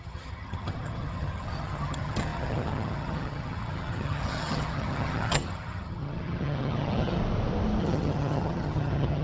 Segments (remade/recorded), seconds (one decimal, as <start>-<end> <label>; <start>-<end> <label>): 0.0-7.2 remade; 7.2-7.8 recorded; 7.8-9.2 remade